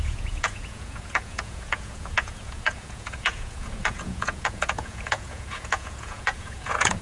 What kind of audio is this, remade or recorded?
remade